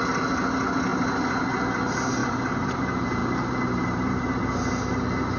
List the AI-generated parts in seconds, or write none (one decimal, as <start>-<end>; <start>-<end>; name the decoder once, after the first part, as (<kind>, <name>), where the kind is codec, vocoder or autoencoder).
0.9-1.6 (vocoder, BigVGAN v2); 2.2-2.8; 3.2-4.4